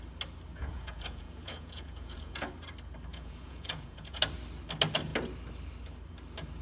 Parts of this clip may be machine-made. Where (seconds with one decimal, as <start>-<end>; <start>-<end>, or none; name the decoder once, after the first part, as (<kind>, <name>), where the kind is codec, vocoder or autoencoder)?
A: 0.5-2.5 (vocoder, Vocos); 3.1-4.2